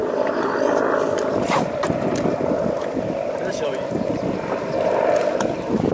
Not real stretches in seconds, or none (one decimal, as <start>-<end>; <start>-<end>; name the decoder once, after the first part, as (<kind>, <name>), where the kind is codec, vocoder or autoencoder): none